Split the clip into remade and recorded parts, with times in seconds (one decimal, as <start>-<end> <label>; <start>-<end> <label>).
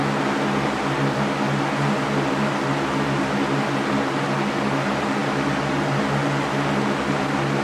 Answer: 0.0-7.6 recorded